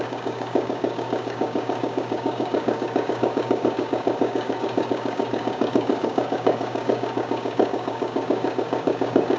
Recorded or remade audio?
remade